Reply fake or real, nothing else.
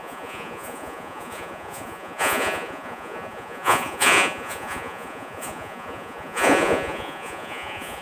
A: fake